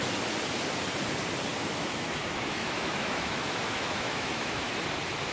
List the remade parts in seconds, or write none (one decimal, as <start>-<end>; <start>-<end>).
1.5-4.7